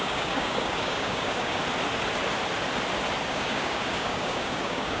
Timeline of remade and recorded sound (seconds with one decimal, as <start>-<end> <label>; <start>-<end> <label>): 0.0-1.6 remade; 1.6-3.3 recorded; 3.3-5.0 remade